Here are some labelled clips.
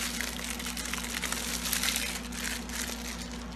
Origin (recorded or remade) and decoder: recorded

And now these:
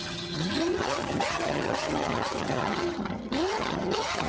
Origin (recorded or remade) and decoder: remade, vocoder, HiFi-GAN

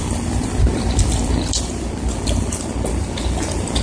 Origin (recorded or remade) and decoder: recorded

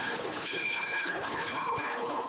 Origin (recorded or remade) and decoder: remade, codec, HILCodec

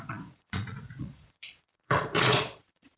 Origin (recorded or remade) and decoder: remade, vocoder, Vocos